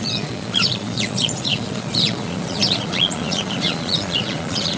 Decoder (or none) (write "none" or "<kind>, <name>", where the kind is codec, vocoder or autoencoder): vocoder, Vocos